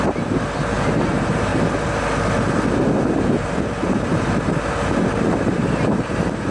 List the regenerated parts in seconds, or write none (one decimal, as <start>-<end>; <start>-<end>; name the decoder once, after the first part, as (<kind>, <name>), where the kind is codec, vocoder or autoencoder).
0.0-1.5 (vocoder, BigVGAN v2); 3.1-6.5